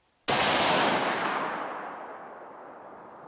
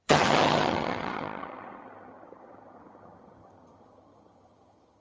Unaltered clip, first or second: first